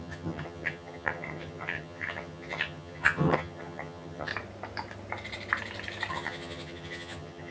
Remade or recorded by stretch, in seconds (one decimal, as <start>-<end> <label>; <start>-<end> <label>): 0.0-4.3 remade; 4.3-6.1 recorded; 6.1-7.5 remade